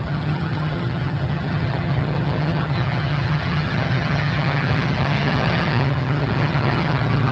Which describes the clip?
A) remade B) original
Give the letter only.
A